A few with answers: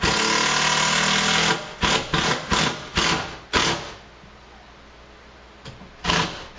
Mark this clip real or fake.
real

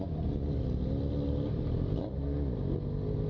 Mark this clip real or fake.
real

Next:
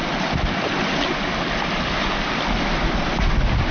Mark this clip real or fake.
real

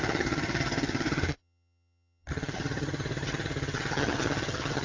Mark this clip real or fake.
fake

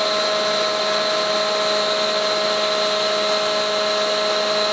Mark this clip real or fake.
real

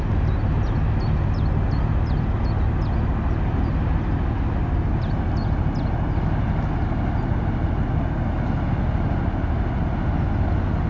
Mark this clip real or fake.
real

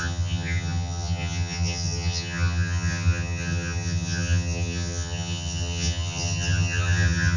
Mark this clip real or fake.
fake